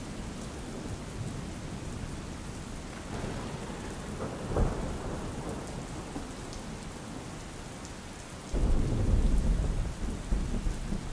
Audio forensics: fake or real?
real